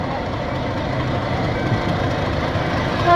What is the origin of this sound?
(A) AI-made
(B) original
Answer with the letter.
B